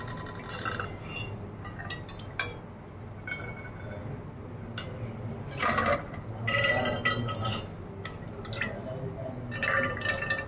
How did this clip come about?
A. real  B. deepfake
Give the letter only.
A